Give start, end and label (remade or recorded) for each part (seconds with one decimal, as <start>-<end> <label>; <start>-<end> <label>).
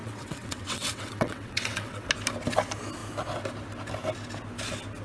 0.0-2.1 remade; 2.1-5.0 recorded